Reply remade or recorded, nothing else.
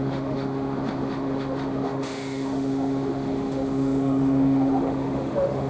remade